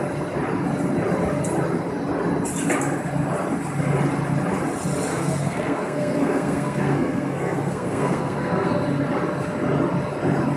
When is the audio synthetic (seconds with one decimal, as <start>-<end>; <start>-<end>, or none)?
5.1-8.7